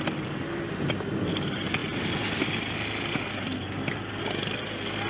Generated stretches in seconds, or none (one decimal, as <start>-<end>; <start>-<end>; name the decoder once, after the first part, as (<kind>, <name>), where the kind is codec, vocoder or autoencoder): none